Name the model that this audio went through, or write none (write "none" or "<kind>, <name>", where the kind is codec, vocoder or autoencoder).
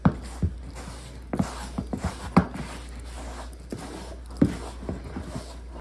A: none